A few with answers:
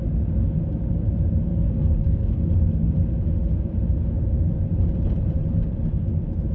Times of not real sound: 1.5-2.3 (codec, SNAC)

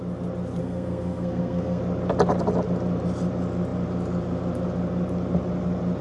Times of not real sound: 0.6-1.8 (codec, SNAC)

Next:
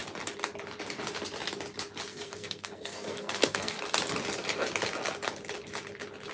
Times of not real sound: 2.1-3.8 (codec, SNAC)

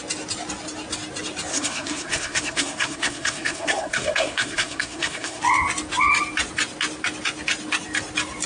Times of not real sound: 1.5-5.4 (codec, SNAC)

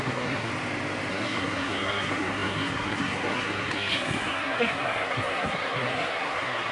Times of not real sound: 0.0-0.5 (codec, SNAC); 1.1-6.7

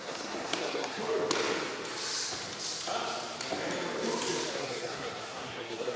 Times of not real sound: 0.0-1.0 (codec, SNAC); 4.5-6.0

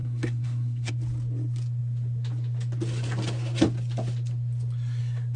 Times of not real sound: 0.0-0.9 (codec, SNAC)

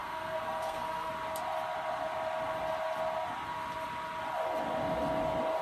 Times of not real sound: 0.0-1.1 (codec, SNAC)